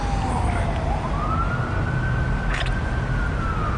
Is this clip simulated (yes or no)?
no